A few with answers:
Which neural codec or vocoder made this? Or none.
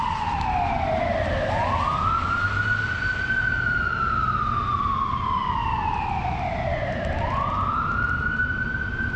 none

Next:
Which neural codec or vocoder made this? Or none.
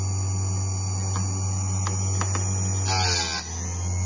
none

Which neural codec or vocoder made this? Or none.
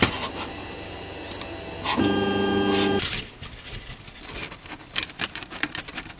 none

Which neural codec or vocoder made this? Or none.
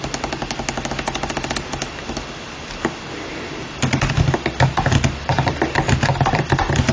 none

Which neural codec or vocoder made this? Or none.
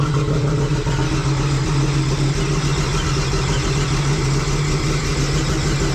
none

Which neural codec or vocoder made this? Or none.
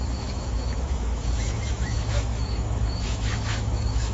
autoencoder, DAC-VAE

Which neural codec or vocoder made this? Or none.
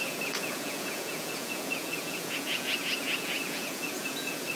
vocoder, Vocos